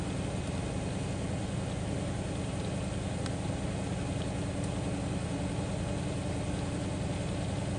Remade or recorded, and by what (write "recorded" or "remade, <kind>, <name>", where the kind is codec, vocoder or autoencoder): recorded